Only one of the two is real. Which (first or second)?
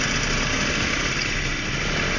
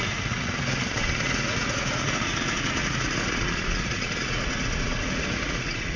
first